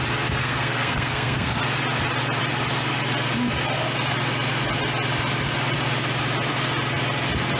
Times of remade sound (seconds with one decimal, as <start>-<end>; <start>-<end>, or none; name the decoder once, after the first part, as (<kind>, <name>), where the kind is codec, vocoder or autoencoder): 0.4-1.6 (codec, SNAC)